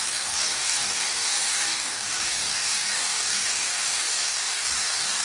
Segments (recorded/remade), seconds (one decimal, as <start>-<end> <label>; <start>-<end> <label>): 0.0-5.2 remade